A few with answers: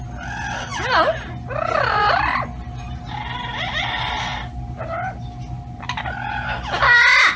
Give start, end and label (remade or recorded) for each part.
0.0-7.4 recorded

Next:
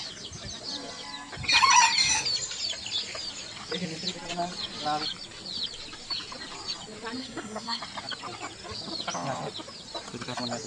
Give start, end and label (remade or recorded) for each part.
0.0-7.2 recorded; 7.2-7.8 remade; 7.8-10.7 recorded

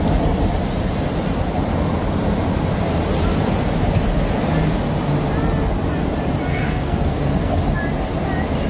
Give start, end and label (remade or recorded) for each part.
0.0-6.5 recorded; 6.5-7.6 remade; 7.6-8.7 recorded

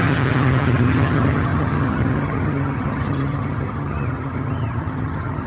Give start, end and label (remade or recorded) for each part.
0.0-5.5 remade

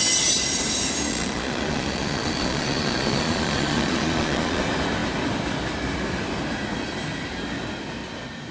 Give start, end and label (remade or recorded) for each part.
0.0-1.1 recorded; 1.1-4.6 remade; 4.6-8.5 recorded

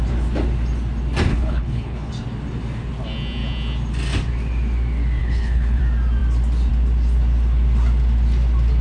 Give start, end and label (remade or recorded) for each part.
0.0-1.3 recorded; 1.3-2.1 remade; 2.1-5.2 recorded; 5.2-5.8 remade; 5.8-8.8 recorded

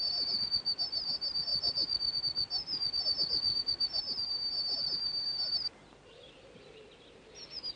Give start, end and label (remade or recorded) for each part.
0.0-7.8 recorded

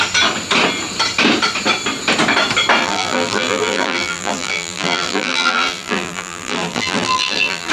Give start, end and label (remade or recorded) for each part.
0.0-2.8 recorded; 2.8-7.7 remade